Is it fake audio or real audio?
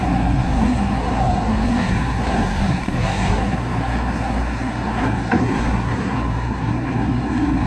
fake